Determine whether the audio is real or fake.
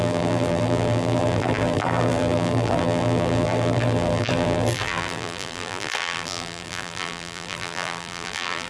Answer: fake